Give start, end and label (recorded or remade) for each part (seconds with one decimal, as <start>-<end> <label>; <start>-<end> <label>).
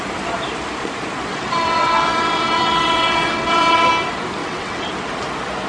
0.0-1.3 recorded; 1.3-3.9 remade; 3.9-4.4 recorded; 4.4-4.9 remade; 4.9-5.7 recorded